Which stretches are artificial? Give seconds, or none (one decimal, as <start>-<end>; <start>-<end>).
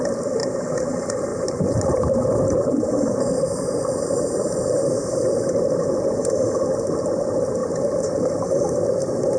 1.3-5.6